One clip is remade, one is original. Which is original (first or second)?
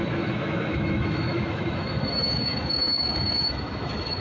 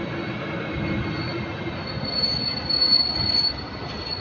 second